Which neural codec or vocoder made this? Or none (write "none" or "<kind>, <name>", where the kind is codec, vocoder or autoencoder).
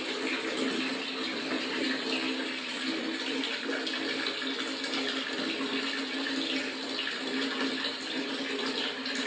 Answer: none